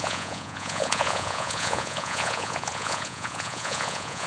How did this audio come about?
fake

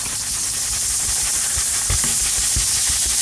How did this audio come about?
real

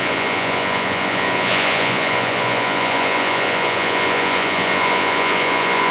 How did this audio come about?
fake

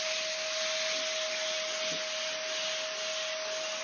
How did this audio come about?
real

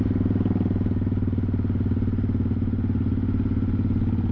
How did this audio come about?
real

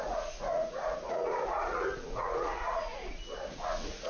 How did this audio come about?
fake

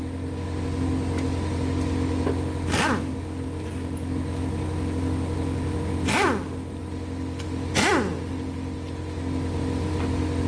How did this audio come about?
real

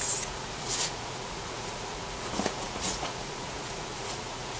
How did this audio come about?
fake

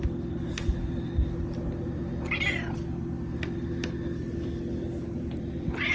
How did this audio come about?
real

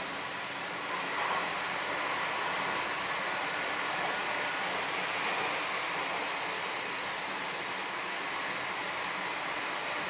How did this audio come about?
real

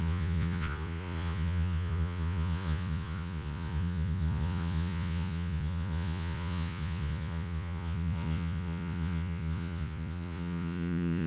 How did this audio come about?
fake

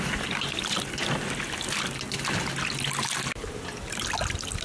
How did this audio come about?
real